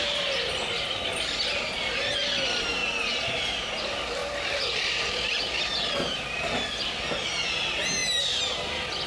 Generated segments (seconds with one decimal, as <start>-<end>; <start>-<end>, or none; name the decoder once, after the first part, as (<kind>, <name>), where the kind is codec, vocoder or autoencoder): 4.2-5.6 (vocoder, BigVGAN v2)